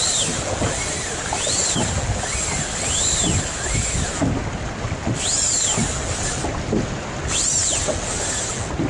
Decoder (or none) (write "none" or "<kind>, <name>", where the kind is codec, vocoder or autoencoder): none